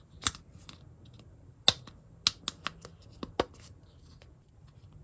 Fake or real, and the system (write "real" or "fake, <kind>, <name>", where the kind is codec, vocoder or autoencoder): real